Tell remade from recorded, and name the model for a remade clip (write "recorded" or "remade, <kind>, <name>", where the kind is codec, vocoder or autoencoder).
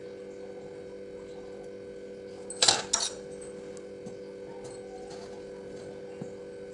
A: recorded